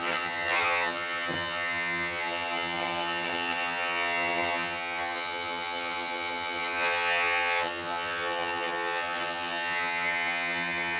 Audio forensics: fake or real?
fake